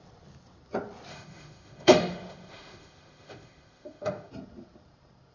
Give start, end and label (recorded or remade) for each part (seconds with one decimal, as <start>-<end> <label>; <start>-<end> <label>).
0.0-1.1 recorded; 1.1-4.3 remade; 4.3-5.3 recorded